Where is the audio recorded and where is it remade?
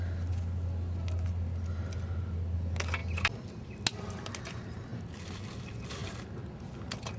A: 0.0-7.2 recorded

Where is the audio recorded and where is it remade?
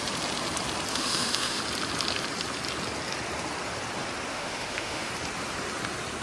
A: 0.0-0.9 recorded; 0.9-1.6 remade; 1.6-4.3 recorded; 4.3-5.1 remade; 5.1-6.2 recorded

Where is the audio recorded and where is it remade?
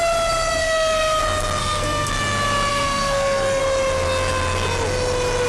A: 0.0-0.6 recorded; 0.6-1.2 remade; 1.2-1.6 recorded; 1.6-2.1 remade; 2.1-2.7 recorded; 2.7-3.6 remade; 3.6-5.5 recorded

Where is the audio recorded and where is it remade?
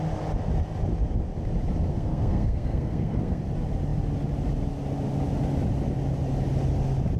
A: 0.0-1.9 recorded; 1.9-3.4 remade; 3.4-7.2 recorded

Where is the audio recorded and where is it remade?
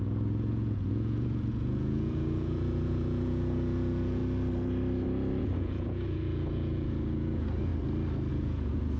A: 0.0-4.2 remade; 4.2-5.4 recorded; 5.4-7.7 remade; 7.7-8.3 recorded; 8.3-9.0 remade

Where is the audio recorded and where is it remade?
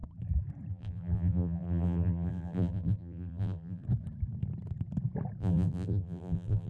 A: 0.0-0.7 recorded; 0.7-3.8 remade; 3.8-5.4 recorded; 5.4-6.7 remade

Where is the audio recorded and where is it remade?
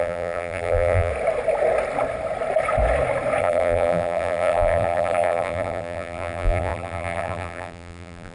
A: 0.0-1.1 remade; 1.1-3.4 recorded; 3.4-8.3 remade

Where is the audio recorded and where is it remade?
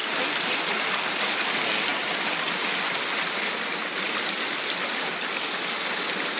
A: 0.0-6.4 recorded